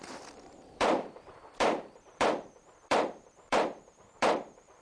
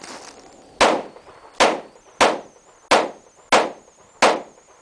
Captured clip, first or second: second